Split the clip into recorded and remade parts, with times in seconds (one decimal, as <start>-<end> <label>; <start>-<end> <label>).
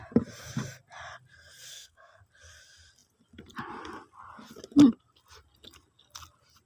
0.0-1.7 recorded; 1.7-2.2 remade; 2.2-6.7 recorded